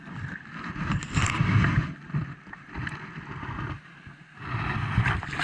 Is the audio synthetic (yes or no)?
no